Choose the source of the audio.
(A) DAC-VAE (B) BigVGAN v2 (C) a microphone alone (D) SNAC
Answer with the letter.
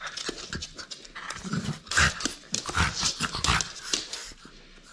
C